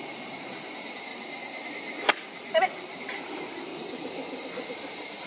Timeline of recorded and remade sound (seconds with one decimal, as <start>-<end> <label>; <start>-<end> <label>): 0.0-1.1 remade; 1.1-2.9 recorded; 2.9-3.7 remade; 3.7-4.7 recorded; 4.7-5.3 remade